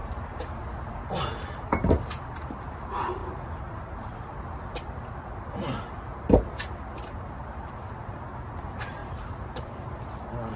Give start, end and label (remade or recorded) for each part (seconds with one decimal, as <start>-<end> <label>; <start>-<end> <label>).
0.0-1.1 remade; 1.1-3.2 recorded; 3.2-4.4 remade; 4.4-9.0 recorded; 9.0-10.0 remade; 10.0-10.6 recorded